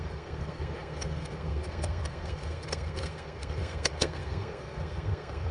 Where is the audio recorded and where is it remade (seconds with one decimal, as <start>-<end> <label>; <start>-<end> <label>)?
0.0-5.5 remade